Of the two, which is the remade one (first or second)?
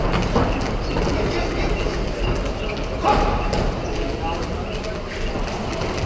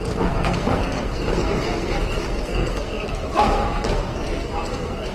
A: second